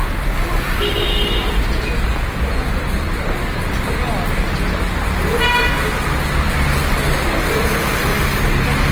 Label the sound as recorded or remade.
recorded